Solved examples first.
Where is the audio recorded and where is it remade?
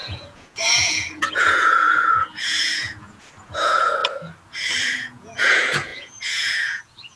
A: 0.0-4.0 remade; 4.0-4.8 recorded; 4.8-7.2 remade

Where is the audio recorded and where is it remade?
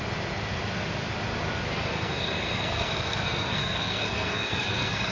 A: 0.0-1.9 recorded; 1.9-5.1 remade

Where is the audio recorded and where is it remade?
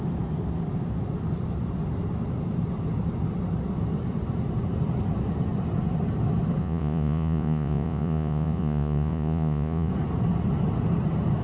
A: 0.0-6.6 recorded; 6.6-9.9 remade; 9.9-11.4 recorded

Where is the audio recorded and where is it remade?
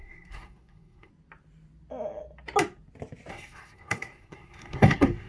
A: 0.0-1.1 remade; 1.1-3.3 recorded; 3.3-5.3 remade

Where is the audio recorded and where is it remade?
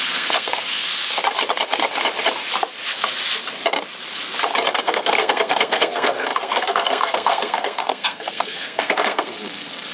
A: 0.0-0.9 remade; 0.9-4.8 recorded; 4.8-9.9 remade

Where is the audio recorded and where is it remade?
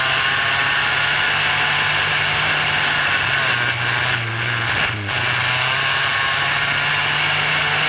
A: 0.0-7.9 recorded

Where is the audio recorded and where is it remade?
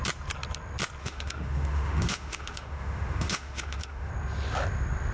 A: 0.0-1.0 recorded; 1.0-4.1 remade; 4.1-5.1 recorded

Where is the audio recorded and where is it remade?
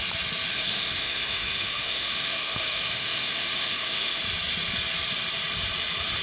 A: 0.0-0.5 recorded; 0.5-4.2 remade; 4.2-6.2 recorded